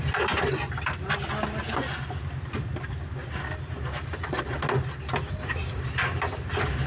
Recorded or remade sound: recorded